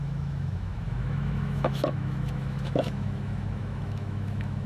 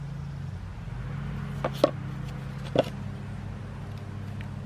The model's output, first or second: first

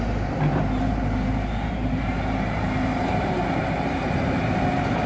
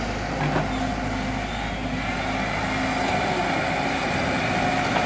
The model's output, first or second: first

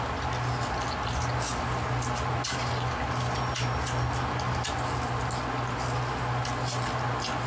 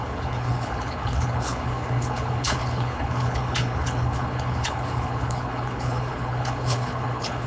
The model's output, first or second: second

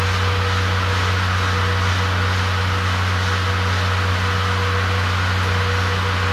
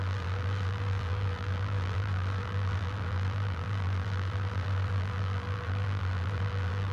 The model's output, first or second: second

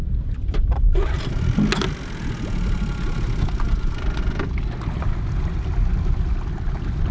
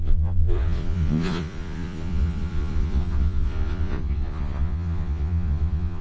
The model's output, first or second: second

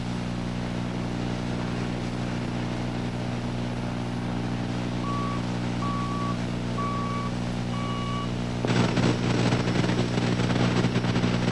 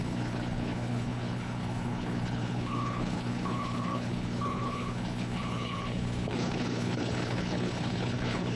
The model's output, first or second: second